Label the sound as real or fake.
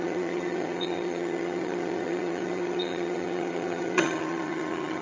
fake